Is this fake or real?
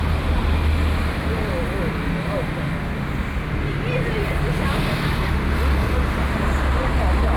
real